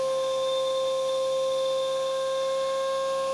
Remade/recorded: remade